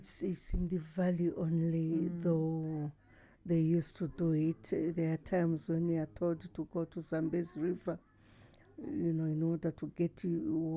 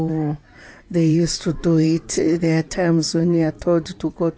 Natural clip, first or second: first